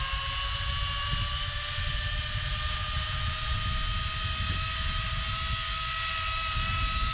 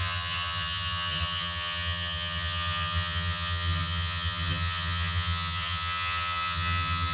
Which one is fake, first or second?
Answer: second